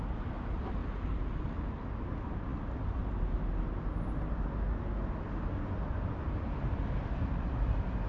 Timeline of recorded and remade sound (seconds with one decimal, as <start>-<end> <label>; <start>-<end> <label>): 0.0-8.1 recorded